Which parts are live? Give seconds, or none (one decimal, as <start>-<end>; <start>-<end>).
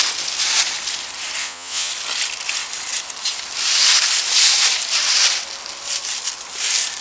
0.0-1.4; 1.9-7.0